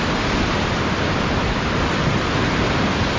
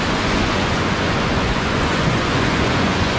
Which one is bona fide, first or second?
first